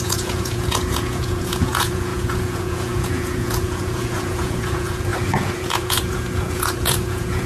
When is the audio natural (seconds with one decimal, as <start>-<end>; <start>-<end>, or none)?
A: none